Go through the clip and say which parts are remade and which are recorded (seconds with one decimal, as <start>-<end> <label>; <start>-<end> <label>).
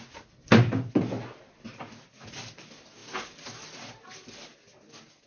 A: 0.0-5.3 recorded